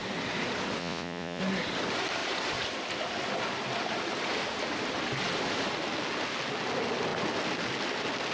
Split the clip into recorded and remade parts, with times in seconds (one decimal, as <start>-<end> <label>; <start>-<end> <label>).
0.0-0.8 recorded; 0.8-1.4 remade; 1.4-8.3 recorded